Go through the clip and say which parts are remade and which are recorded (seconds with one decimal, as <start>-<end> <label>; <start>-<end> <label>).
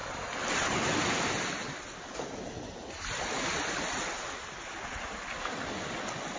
0.0-6.4 recorded